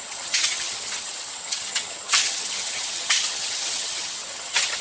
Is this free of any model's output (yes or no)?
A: no